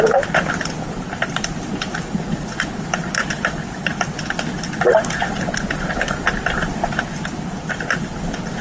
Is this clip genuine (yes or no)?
no